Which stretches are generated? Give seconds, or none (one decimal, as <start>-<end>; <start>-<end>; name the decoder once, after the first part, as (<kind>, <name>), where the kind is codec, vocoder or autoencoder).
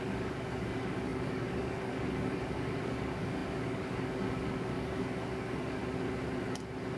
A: 0.0-5.8 (codec, DAC)